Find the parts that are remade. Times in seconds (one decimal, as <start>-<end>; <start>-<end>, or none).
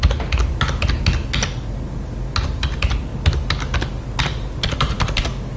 none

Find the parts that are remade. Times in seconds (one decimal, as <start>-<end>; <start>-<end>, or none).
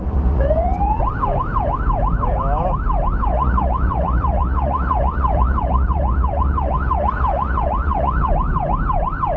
0.0-1.0; 3.3-8.3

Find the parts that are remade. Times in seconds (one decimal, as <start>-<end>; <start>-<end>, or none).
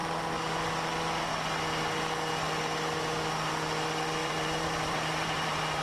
4.2-5.8